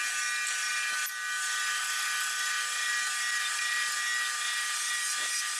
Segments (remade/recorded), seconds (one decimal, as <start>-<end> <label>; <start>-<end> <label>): 0.0-5.6 recorded